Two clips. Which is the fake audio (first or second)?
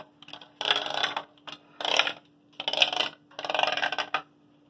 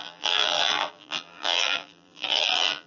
second